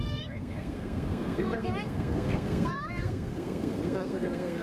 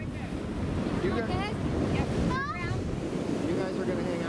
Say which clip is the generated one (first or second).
first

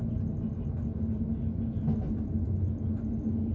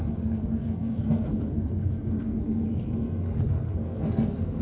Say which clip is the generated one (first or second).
second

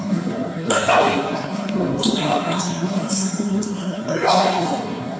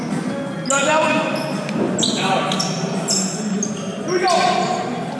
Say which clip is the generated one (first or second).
first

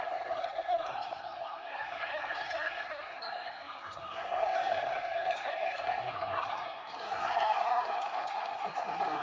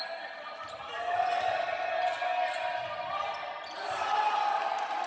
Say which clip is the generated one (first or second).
first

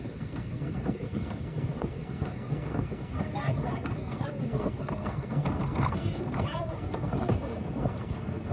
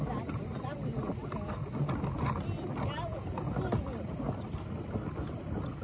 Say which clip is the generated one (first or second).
first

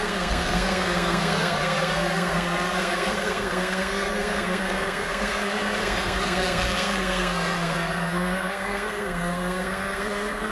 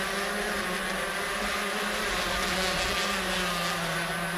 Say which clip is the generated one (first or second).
first